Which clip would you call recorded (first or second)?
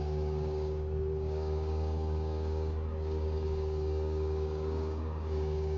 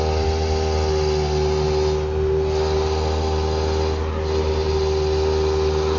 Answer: second